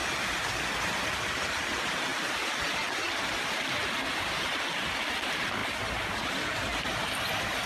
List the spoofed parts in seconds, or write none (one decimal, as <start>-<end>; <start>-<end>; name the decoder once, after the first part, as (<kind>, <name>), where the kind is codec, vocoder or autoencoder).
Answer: 1.2-2.1 (vocoder, BigVGAN v2); 5.0-5.6; 6.3-7.7